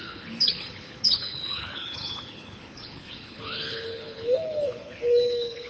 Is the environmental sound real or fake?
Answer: fake